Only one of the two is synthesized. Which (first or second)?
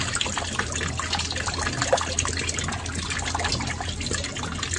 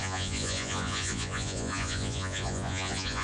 second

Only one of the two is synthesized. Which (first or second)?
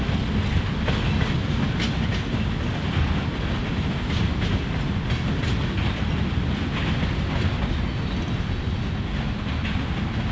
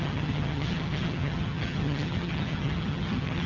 second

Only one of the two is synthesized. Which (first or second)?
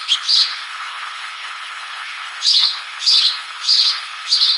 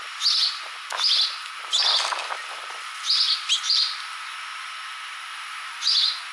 first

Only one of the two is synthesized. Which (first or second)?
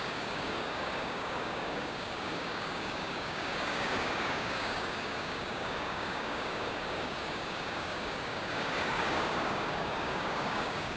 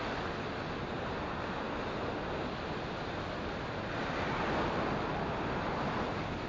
first